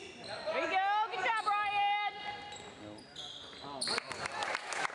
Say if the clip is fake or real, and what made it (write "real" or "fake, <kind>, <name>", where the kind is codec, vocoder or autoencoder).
real